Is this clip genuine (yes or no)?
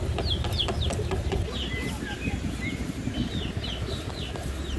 yes